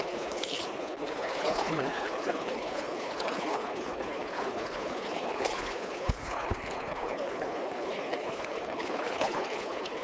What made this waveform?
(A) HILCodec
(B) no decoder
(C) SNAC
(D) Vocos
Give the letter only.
A